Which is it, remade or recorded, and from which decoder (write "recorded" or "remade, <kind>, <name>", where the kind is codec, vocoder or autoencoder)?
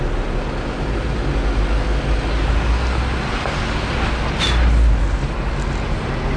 recorded